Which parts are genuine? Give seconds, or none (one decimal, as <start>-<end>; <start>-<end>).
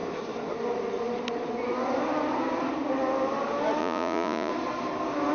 0.0-3.8; 4.5-5.3